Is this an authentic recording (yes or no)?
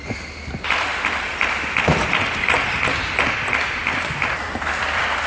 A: yes